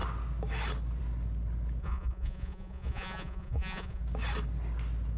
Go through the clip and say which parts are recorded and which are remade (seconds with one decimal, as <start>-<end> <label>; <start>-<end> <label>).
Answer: 0.0-1.8 recorded; 1.8-4.0 remade; 4.0-5.2 recorded